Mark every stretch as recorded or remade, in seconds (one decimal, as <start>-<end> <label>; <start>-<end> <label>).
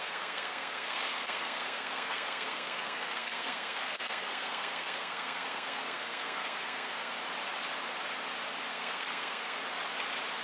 0.0-7.1 remade; 7.1-8.7 recorded; 8.7-9.6 remade; 9.6-10.4 recorded